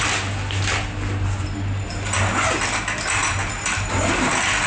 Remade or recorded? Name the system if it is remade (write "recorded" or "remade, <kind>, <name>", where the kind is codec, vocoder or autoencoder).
recorded